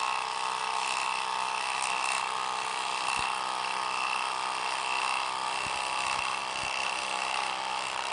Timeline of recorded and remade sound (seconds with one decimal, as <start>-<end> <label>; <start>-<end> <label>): 0.0-2.4 recorded; 2.4-4.6 remade; 4.6-6.4 recorded; 6.4-8.1 remade